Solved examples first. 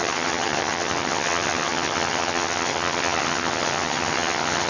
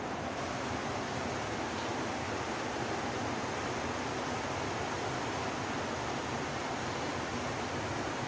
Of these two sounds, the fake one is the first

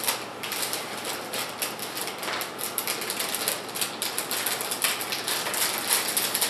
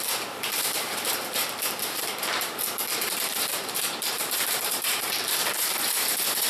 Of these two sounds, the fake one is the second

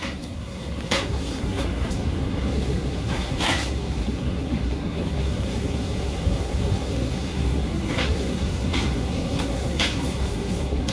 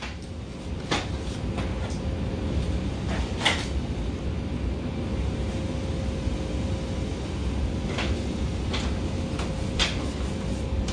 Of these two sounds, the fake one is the first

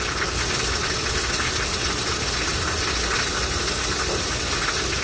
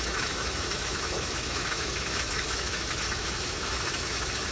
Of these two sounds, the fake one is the second